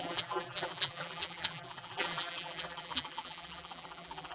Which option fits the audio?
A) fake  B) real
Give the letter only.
A